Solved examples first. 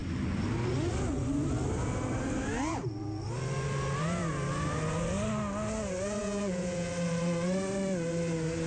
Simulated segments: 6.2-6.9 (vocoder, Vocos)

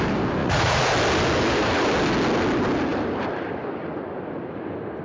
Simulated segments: 0.4-0.9 (vocoder, Vocos)

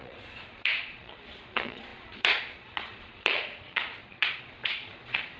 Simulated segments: 0.0-5.4 (vocoder, Vocos)

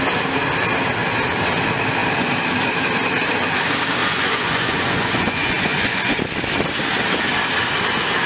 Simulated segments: 4.0-6.2 (vocoder, Vocos)

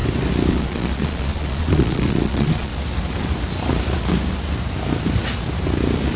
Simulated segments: 0.5-2.7 (vocoder, Vocos)

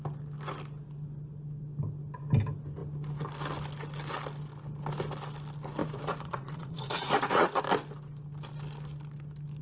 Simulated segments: 5.8-7.6 (vocoder, Vocos)

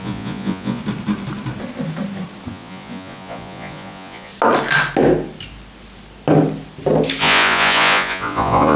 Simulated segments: 0.0-0.8 (vocoder, Vocos); 2.5-4.3; 7.2-8.8

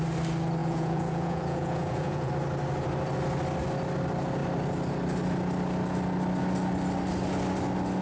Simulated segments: 0.6-2.3 (vocoder, Vocos)